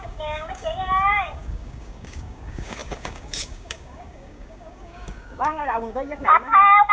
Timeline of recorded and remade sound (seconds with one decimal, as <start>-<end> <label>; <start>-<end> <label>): 0.0-6.9 remade